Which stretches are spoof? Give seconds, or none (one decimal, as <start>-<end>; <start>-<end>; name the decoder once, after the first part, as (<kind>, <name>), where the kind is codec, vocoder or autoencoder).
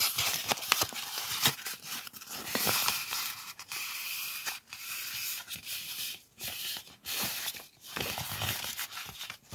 0.0-4.0 (vocoder, BigVGAN v2); 5.7-9.5